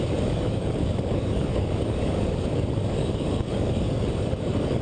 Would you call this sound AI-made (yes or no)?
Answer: yes